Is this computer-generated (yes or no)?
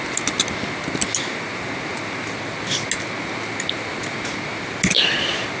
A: no